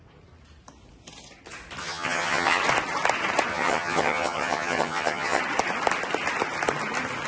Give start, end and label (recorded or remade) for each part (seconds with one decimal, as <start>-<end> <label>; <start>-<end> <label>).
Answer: 0.0-1.8 recorded; 1.8-2.6 remade; 2.6-3.5 recorded; 3.5-5.4 remade; 5.4-7.3 recorded